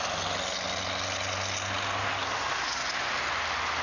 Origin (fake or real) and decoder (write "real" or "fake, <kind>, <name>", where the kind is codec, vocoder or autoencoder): real